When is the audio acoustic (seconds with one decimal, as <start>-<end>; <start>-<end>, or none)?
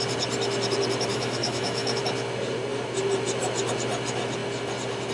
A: 0.0-1.1; 2.0-5.1